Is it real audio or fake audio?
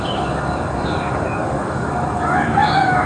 fake